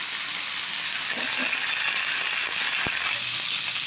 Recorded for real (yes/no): yes